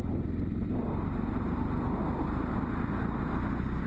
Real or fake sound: real